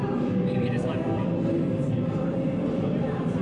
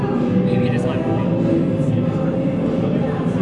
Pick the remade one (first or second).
first